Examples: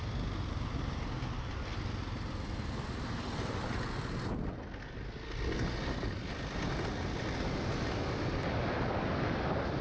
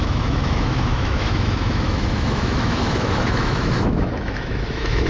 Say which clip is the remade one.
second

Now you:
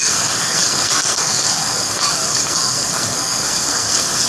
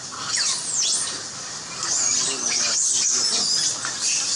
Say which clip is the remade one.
first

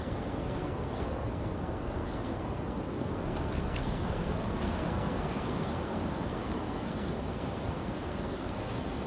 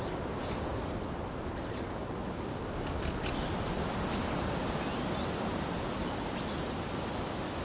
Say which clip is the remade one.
first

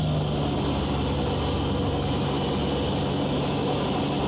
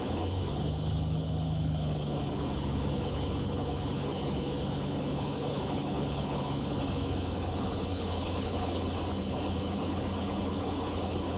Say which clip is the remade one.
second